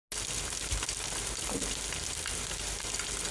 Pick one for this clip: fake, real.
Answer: real